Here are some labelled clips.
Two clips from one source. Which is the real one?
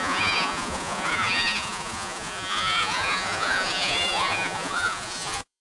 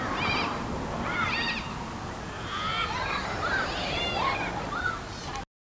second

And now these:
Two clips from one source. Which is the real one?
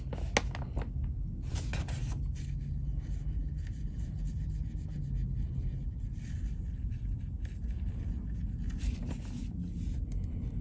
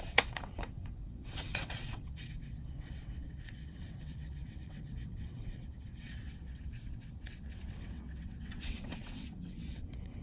first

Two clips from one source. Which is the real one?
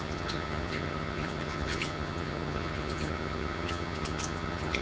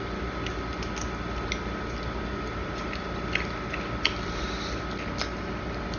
second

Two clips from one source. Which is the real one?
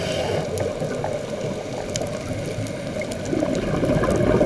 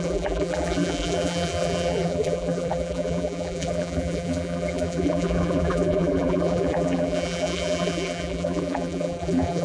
first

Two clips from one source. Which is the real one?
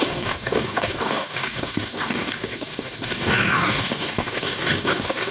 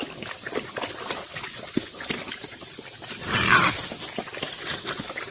second